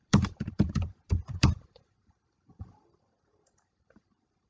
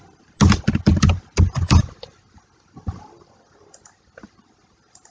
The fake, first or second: first